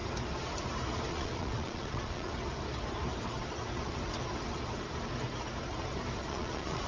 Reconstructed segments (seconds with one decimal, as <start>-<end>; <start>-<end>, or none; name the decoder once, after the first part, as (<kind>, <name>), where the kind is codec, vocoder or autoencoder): 1.1-2.3 (vocoder, Vocos); 6.3-6.9